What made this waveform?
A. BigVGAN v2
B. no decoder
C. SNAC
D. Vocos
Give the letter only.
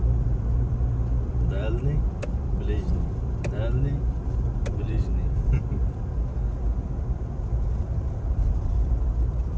A